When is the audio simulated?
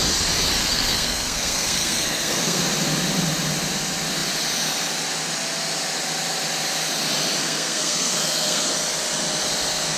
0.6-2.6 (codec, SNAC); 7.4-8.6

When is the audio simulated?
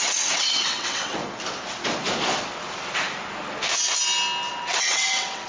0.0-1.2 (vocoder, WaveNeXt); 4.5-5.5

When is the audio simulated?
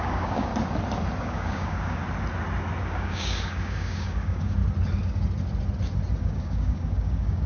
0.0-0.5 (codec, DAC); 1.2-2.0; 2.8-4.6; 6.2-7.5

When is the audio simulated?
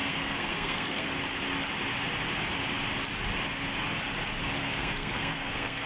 0.0-1.1 (codec, SNAC); 4.6-5.9